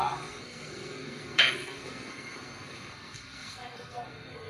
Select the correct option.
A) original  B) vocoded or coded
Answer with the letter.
B